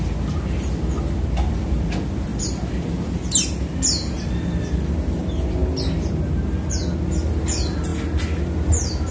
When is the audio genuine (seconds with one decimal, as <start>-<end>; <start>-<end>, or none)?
0.0-9.1